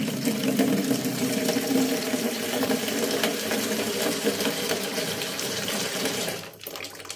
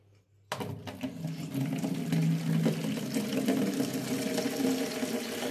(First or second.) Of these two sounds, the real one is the second